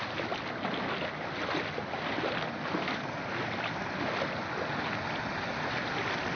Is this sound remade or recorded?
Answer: recorded